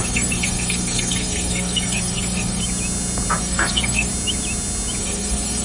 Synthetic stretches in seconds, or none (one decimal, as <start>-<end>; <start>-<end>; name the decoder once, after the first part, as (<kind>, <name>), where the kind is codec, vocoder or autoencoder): 0.0-2.6 (codec, SNAC); 3.4-4.1; 5.0-5.6